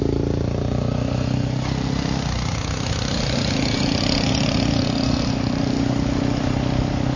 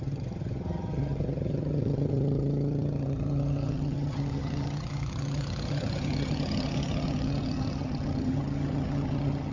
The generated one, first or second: second